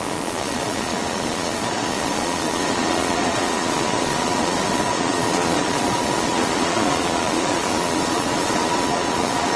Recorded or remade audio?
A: remade